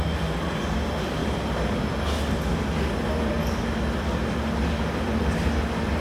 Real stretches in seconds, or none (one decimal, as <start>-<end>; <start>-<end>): 0.0-6.0